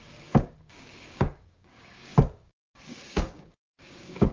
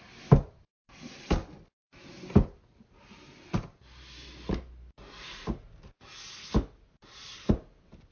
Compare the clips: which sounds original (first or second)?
second